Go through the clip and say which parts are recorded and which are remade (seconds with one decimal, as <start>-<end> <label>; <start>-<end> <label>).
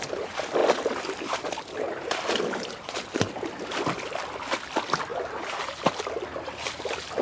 0.0-0.6 recorded; 0.6-3.8 remade; 3.8-5.1 recorded; 5.1-6.0 remade; 6.0-7.2 recorded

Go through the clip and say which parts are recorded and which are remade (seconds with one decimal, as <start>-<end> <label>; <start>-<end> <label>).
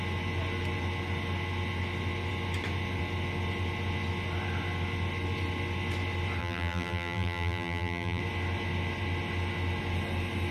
0.0-6.4 recorded; 6.4-8.2 remade; 8.2-10.5 recorded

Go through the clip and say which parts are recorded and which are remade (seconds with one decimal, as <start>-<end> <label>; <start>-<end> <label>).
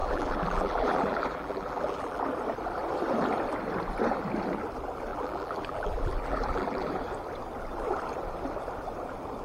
0.0-2.2 remade; 2.2-5.1 recorded; 5.1-6.9 remade; 6.9-9.4 recorded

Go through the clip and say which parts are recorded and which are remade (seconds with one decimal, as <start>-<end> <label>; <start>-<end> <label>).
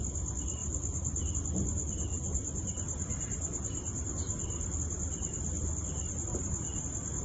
0.0-2.1 recorded; 2.1-4.8 remade; 4.8-6.3 recorded; 6.3-6.8 remade; 6.8-7.2 recorded